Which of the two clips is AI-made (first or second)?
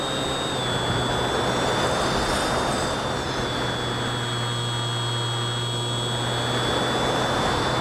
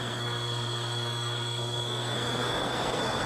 second